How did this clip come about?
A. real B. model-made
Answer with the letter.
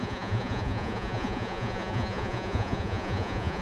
B